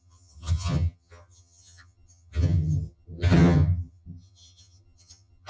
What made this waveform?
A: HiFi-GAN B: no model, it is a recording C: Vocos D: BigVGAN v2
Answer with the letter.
A